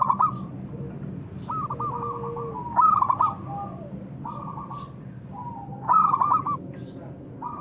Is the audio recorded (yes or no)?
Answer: yes